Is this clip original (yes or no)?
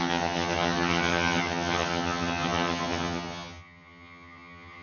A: no